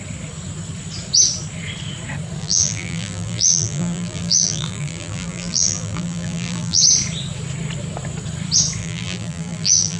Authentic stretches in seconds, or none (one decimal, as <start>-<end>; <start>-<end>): 0.0-2.4; 6.8-8.8